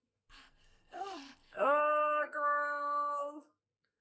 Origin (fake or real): fake